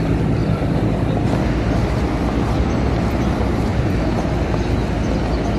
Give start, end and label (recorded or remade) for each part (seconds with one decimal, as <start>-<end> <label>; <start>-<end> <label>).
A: 0.0-3.7 recorded; 3.7-4.3 remade; 4.3-5.6 recorded